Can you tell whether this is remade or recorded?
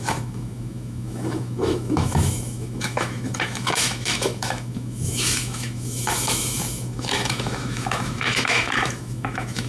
remade